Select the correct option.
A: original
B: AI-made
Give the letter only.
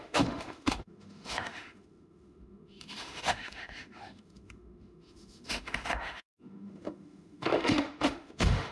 B